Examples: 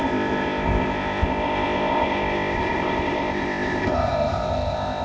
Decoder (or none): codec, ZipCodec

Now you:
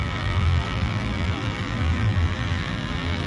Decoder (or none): vocoder, BigVGAN v2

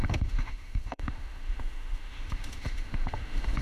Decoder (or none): autoencoder, DAC-VAE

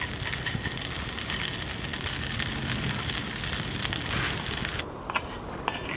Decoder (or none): none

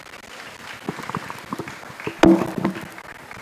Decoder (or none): none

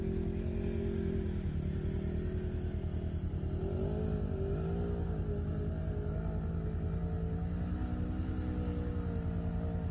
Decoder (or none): none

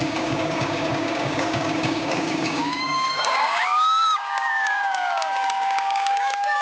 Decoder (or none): codec, DAC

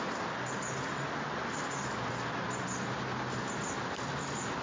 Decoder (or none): none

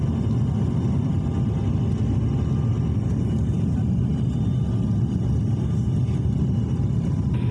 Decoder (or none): none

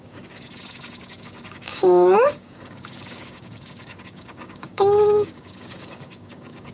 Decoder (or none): codec, DAC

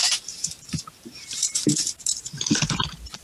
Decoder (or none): vocoder, BigVGAN v2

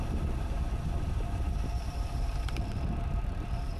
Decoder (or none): vocoder, BigVGAN v2